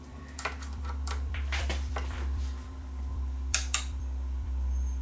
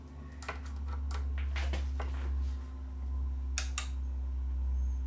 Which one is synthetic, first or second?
first